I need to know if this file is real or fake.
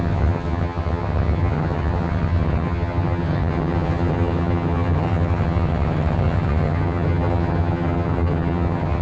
fake